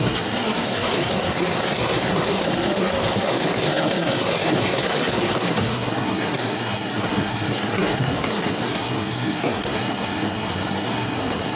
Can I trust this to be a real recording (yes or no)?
no